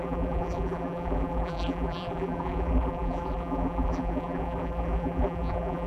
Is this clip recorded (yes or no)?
no